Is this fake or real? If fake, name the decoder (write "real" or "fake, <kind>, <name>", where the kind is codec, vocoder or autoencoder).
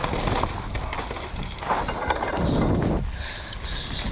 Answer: real